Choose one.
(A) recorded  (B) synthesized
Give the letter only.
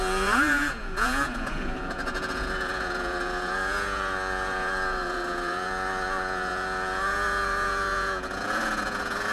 B